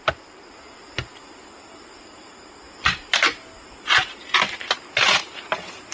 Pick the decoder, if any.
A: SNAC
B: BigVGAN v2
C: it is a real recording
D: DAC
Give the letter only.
C